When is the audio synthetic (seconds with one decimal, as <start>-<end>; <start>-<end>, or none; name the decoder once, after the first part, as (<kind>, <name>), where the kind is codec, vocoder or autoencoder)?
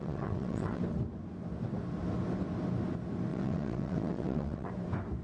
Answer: 0.0-0.8 (vocoder, WaveNeXt); 3.3-4.7